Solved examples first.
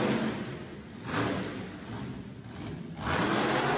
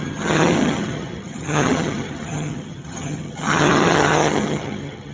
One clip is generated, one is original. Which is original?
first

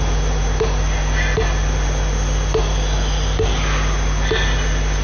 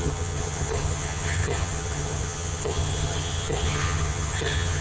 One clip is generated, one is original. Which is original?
first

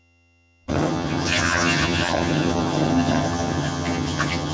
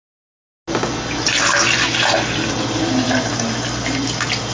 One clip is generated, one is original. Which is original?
second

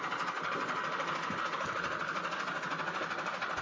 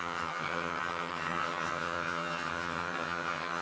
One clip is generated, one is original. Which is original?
first